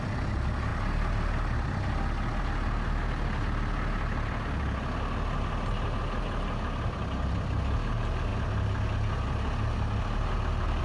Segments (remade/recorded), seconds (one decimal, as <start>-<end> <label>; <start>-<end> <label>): 0.0-10.8 recorded